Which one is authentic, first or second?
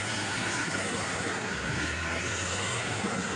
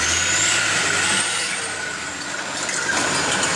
second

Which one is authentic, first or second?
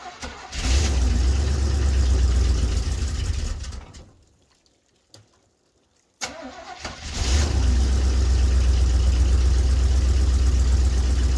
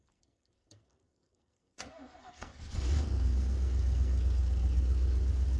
first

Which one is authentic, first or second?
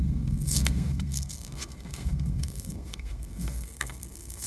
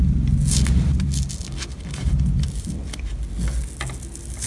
second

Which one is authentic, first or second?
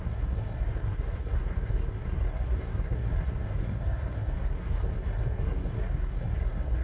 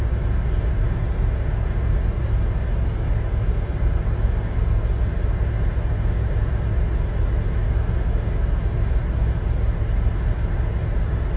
second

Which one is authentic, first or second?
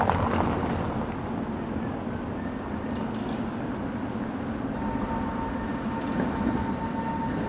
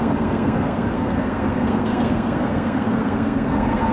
first